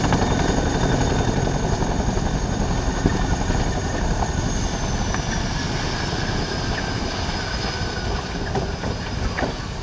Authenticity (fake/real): real